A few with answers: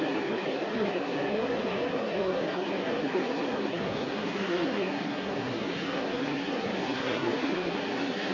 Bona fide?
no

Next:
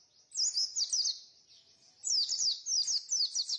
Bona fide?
yes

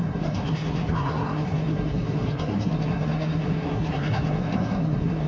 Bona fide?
no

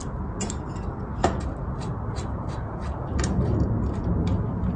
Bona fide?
yes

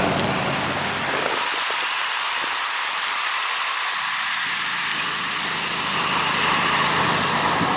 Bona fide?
yes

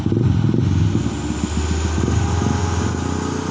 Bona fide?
yes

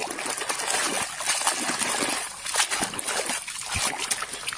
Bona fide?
yes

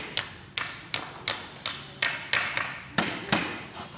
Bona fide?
yes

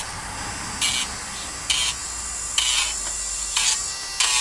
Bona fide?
yes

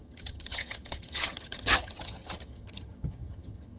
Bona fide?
no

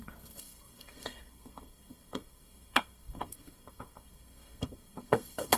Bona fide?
no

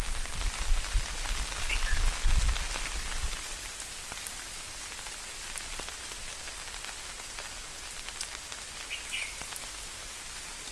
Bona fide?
yes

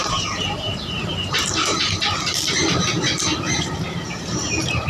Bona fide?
no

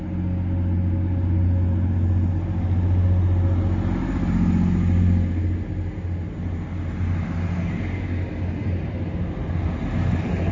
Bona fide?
yes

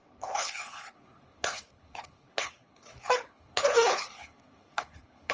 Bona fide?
no